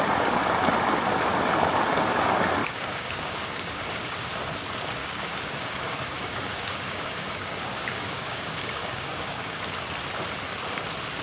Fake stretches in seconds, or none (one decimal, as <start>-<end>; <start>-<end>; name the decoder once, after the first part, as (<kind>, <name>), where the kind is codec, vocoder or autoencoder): 2.6-4.3 (codec, DAC); 5.0-9.6